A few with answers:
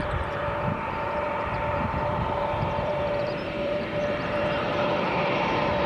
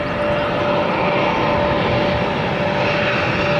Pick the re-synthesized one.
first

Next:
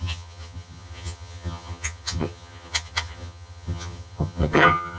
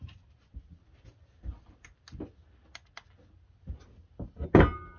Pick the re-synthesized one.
first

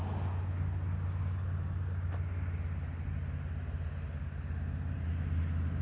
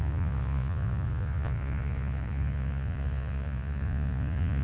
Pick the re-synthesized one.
second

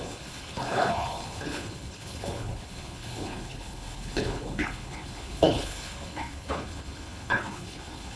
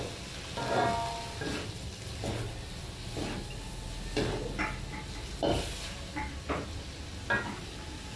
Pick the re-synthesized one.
first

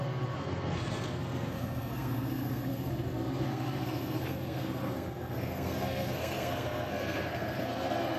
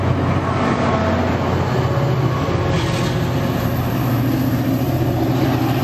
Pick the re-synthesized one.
first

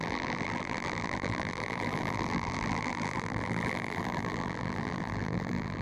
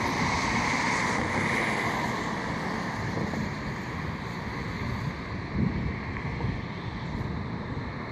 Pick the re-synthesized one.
first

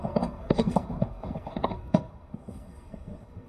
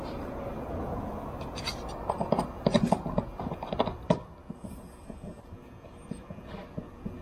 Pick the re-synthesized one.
first